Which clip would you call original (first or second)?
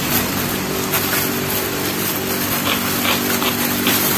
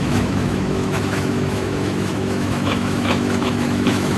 first